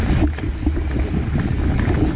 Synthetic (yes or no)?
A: no